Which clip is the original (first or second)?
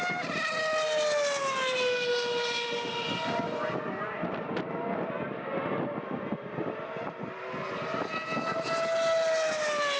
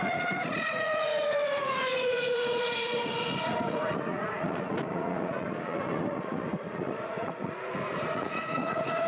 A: first